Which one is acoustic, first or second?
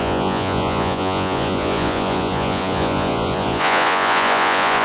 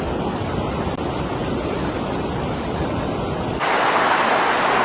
second